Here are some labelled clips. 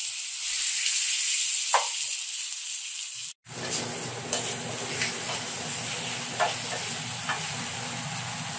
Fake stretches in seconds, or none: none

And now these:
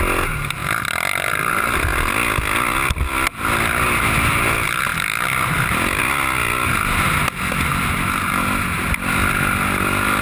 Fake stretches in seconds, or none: none